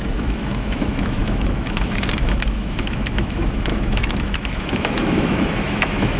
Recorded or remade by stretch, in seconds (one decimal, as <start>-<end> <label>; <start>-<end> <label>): 0.0-6.2 remade